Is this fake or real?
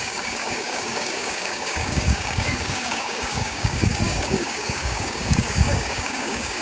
fake